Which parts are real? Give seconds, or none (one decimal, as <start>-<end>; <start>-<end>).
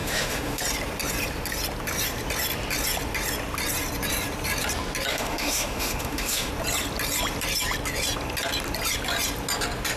0.6-5.1; 6.5-10.0